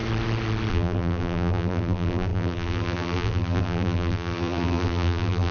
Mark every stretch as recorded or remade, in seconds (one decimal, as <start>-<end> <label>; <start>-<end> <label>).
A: 0.0-0.7 recorded; 0.7-5.5 remade

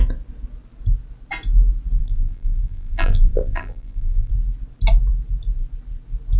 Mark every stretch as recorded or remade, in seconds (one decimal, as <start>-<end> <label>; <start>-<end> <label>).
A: 0.0-2.0 recorded; 2.0-4.3 remade; 4.3-6.4 recorded

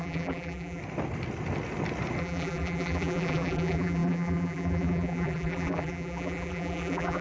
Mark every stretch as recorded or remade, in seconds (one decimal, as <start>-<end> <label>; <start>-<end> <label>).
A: 0.0-0.8 remade; 0.8-2.2 recorded; 2.2-7.2 remade

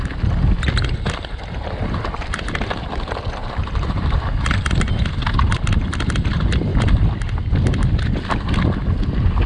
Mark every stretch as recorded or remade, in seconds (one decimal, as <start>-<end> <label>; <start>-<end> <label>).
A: 0.0-3.4 recorded; 3.4-4.2 remade; 4.2-9.5 recorded

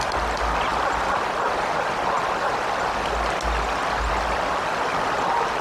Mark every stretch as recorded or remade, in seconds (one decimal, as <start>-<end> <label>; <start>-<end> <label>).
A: 0.0-5.6 recorded

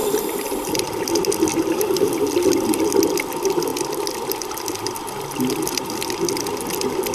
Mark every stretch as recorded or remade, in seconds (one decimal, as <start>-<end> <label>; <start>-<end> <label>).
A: 0.0-1.5 recorded; 1.5-2.1 remade; 2.1-7.1 recorded